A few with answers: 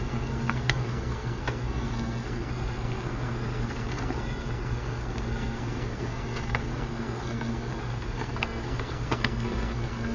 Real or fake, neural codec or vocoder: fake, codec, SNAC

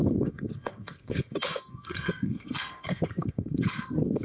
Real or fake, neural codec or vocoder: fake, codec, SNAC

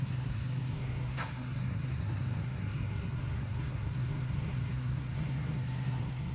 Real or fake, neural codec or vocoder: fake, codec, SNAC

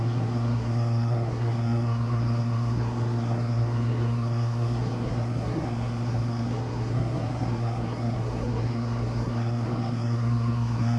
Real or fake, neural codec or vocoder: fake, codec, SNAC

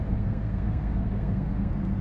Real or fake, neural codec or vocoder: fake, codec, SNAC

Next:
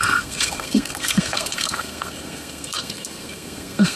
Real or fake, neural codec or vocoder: fake, codec, SNAC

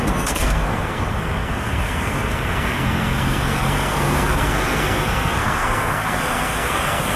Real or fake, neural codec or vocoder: fake, codec, SNAC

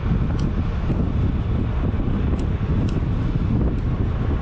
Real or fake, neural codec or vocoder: real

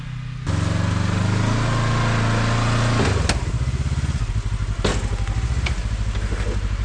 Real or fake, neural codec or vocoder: real